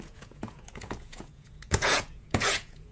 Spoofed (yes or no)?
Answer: yes